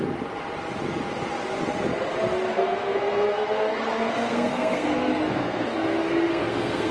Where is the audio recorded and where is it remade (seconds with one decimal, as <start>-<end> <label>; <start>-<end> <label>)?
0.0-2.5 recorded; 2.5-6.9 remade